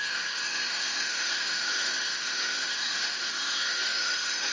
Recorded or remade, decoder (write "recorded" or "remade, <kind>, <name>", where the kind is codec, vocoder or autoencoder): remade, autoencoder, DAC-VAE